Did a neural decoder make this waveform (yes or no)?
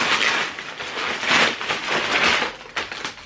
no